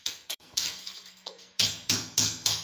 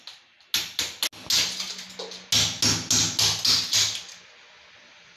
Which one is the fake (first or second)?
first